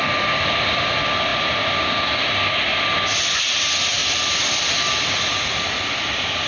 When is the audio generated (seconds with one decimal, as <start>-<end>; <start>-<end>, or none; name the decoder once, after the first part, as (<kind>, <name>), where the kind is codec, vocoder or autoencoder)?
none